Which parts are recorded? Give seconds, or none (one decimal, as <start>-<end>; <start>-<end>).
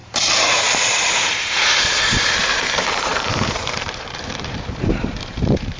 none